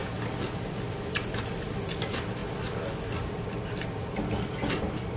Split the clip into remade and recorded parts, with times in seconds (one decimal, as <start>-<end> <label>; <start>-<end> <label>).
0.0-5.2 recorded

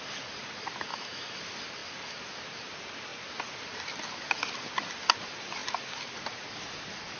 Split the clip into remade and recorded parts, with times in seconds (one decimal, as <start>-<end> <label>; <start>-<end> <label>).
0.0-0.9 recorded; 0.9-1.4 remade; 1.4-7.2 recorded